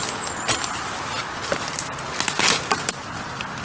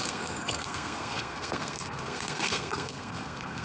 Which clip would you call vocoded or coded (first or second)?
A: second